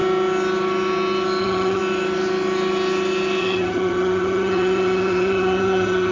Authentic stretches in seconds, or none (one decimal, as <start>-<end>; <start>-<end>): 0.0-1.4; 1.8-3.4